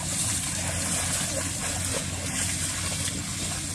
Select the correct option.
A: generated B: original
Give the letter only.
B